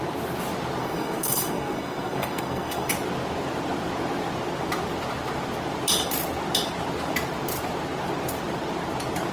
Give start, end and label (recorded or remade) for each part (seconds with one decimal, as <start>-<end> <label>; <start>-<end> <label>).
0.0-0.8 recorded; 0.8-2.9 remade; 2.9-9.3 recorded